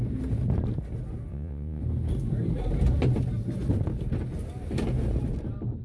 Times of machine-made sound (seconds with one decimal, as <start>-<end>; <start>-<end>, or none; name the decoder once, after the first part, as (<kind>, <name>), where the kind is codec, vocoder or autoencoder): 1.3-1.8 (vocoder, WaveNeXt)